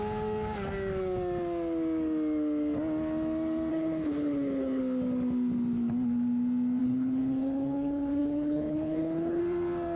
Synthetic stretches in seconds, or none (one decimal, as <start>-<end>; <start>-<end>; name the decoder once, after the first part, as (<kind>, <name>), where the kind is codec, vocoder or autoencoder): 3.7-4.8 (codec, HILCodec); 6.8-9.4